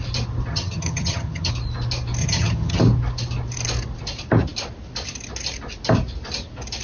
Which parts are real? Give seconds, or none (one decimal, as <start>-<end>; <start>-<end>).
0.0-0.5; 1.5-2.2; 2.8-6.8